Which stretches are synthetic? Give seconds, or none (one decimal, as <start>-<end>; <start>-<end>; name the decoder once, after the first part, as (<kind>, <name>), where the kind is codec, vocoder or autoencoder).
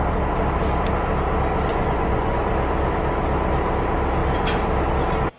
1.7-2.4 (vocoder, Vocos)